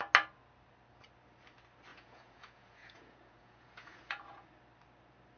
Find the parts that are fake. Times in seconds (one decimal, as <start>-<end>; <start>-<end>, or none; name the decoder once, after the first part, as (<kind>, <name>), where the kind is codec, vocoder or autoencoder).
1.9-4.5 (vocoder, Vocos)

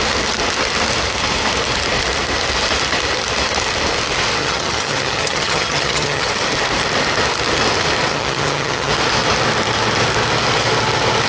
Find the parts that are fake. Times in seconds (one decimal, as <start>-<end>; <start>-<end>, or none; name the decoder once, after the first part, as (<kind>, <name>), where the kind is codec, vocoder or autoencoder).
4.4-6.3 (vocoder, HiFi-GAN); 8.1-8.9

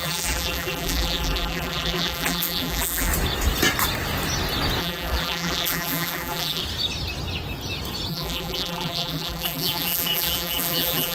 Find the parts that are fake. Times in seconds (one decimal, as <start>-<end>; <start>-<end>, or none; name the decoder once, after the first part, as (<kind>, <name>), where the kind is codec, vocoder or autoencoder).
0.0-3.1 (vocoder, BigVGAN v2); 4.8-6.6; 8.1-11.1

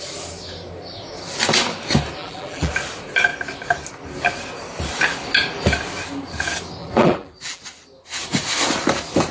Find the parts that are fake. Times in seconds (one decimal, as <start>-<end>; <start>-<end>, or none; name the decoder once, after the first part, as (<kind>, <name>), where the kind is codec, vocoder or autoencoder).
2.2-2.7 (vocoder, BigVGAN v2); 6.8-7.6

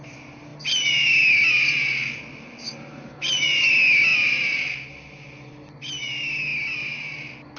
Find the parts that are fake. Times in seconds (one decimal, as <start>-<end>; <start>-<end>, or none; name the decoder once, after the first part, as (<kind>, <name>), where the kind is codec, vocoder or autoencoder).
none

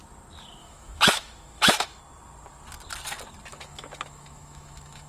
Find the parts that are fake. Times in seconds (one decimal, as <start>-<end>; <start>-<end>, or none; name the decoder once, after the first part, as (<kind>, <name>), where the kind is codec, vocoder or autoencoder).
0.6-2.0 (autoencoder, DAC-VAE); 3.5-5.1